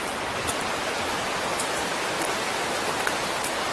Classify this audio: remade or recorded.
recorded